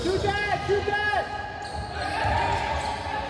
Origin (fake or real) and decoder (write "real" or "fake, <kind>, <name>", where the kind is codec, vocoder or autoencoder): real